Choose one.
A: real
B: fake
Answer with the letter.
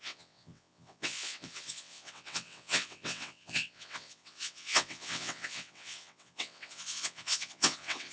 B